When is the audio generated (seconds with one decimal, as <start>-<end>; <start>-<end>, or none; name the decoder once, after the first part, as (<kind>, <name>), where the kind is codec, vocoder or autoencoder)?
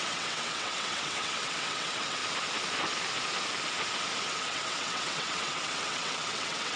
0.0-2.2 (vocoder, WaveNeXt); 4.2-6.8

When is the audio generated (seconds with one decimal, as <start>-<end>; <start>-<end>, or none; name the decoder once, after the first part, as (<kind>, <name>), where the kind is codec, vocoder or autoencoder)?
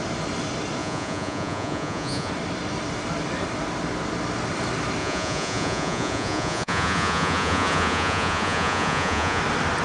0.8-2.3 (vocoder, Vocos); 5.0-9.4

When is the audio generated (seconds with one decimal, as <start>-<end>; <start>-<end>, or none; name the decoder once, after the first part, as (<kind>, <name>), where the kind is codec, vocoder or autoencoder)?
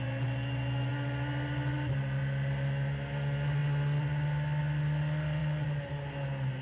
none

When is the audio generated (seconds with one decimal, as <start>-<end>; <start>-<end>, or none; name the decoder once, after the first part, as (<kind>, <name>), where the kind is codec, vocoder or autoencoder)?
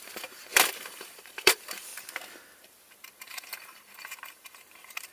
0.0-1.9 (vocoder, BigVGAN v2); 3.2-5.1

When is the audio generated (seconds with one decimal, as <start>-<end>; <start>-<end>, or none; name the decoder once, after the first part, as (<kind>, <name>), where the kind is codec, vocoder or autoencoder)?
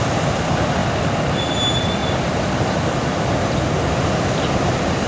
0.0-2.0 (vocoder, BigVGAN v2); 4.0-5.1